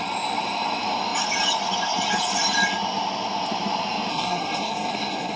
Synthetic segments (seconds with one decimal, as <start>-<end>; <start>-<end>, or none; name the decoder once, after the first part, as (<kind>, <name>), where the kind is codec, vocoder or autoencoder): 4.1-5.4 (codec, SNAC)

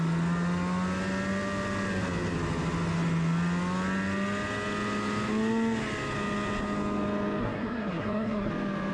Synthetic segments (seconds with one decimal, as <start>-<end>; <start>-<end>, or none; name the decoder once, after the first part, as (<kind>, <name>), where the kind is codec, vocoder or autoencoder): 7.4-8.5 (codec, SNAC)

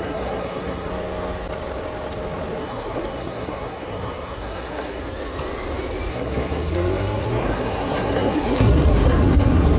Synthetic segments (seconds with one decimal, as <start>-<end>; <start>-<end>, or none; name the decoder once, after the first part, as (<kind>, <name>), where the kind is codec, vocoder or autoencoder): 0.0-0.9 (codec, SNAC); 2.6-5.0; 6.1-9.8

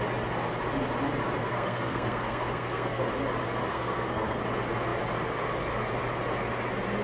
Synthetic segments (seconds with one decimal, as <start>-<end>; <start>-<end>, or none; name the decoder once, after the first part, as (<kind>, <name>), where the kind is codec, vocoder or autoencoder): 1.4-3.0 (codec, SNAC); 3.7-4.4

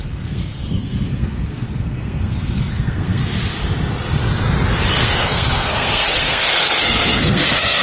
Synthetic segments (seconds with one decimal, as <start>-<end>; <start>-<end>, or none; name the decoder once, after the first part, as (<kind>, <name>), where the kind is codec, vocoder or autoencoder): 0.0-3.2 (codec, SNAC); 4.9-7.8

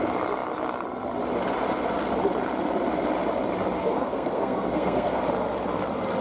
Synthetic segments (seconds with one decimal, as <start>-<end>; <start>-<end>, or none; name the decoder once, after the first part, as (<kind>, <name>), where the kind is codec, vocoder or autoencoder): 3.8-5.2 (codec, SNAC)